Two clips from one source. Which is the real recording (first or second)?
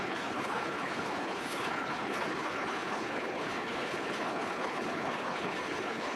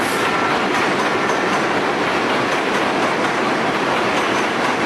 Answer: second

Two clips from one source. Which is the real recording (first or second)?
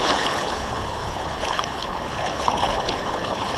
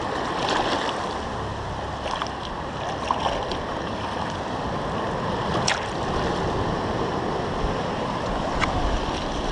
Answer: second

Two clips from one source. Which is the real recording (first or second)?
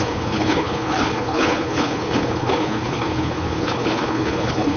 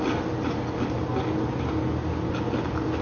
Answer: second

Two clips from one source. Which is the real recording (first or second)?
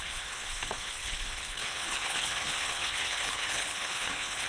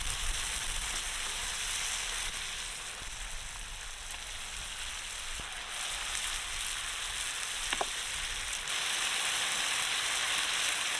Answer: second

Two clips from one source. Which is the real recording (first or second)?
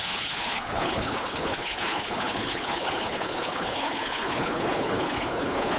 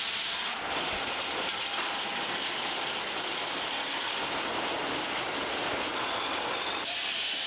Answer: second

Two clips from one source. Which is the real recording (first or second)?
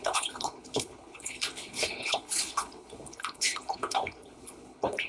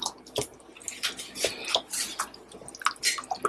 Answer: second